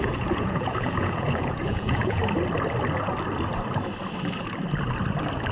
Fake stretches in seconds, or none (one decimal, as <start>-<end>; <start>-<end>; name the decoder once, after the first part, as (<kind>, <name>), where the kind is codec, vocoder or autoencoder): 0.0-2.2 (vocoder, Vocos)